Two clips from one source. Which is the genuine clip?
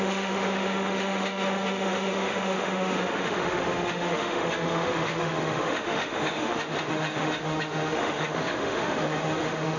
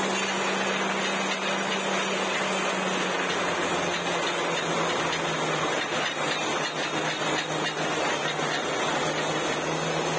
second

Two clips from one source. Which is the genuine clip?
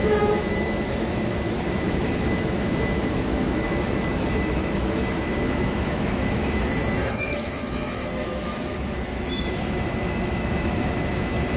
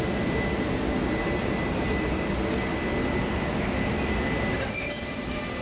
second